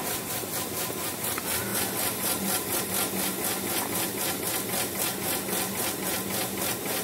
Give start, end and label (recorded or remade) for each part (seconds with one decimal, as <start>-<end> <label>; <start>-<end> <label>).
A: 0.0-1.7 recorded; 1.7-2.8 remade; 2.8-7.0 recorded